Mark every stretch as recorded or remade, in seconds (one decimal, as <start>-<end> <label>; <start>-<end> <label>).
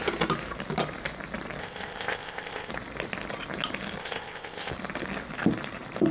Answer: 0.0-1.6 recorded; 1.6-2.7 remade; 2.7-4.0 recorded; 4.0-4.7 remade; 4.7-6.1 recorded